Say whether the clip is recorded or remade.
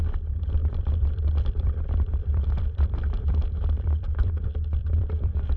remade